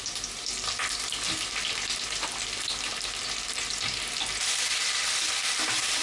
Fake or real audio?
real